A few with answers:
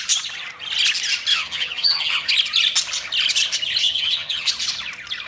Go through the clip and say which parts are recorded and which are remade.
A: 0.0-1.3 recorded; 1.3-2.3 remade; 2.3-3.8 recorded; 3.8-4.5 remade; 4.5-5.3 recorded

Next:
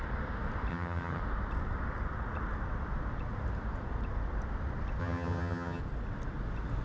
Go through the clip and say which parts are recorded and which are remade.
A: 0.0-0.7 recorded; 0.7-1.2 remade; 1.2-5.0 recorded; 5.0-5.8 remade; 5.8-6.8 recorded

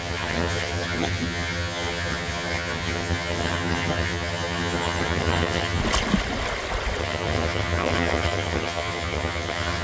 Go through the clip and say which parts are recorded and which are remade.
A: 0.0-5.8 remade; 5.8-7.0 recorded; 7.0-9.8 remade